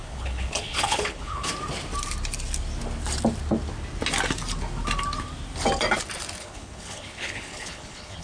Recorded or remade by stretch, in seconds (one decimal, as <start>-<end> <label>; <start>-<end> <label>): 0.0-1.5 remade; 1.5-6.4 recorded; 6.4-8.2 remade